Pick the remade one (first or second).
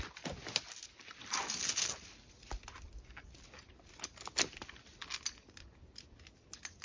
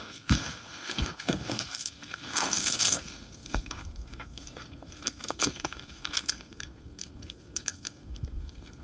second